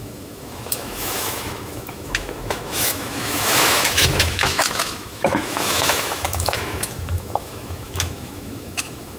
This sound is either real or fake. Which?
fake